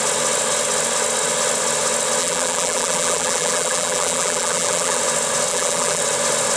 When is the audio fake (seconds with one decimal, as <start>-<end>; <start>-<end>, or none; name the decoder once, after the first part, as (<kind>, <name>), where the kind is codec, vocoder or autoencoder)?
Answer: 2.2-5.0 (vocoder, BigVGAN v2); 5.5-6.0